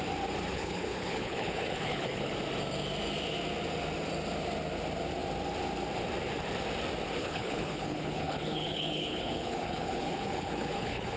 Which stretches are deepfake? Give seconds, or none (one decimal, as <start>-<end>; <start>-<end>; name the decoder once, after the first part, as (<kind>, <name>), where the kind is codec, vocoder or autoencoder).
0.5-2.3 (codec, HILCodec); 7.2-11.2